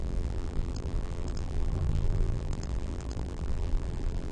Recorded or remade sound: remade